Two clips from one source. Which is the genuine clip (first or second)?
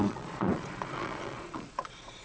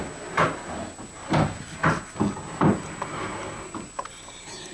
second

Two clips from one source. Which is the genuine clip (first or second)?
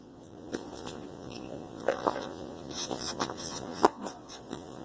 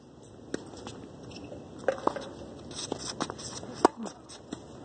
second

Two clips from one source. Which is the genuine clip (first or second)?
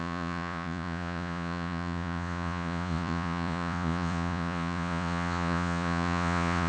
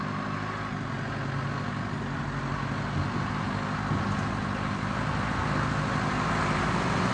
second